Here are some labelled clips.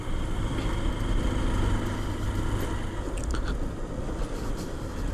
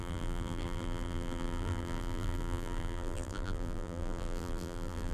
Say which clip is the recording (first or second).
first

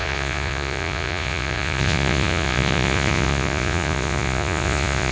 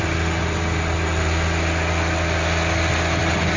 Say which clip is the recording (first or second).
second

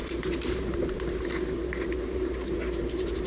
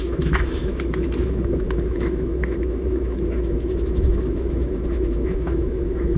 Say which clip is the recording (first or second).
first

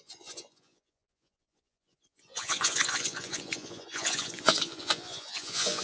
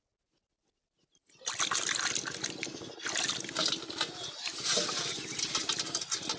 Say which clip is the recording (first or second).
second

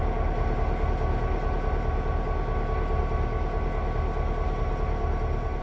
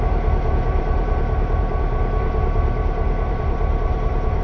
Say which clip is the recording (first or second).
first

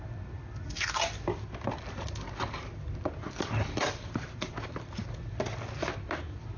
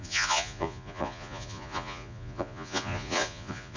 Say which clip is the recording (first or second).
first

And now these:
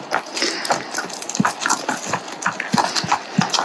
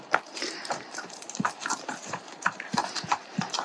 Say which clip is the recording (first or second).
first